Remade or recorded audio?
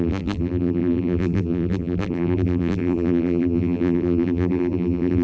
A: remade